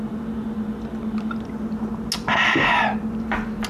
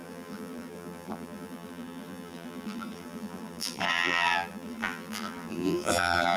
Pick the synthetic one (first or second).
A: second